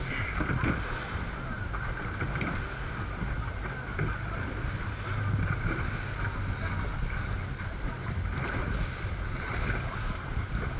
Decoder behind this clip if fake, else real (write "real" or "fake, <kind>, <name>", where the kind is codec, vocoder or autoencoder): real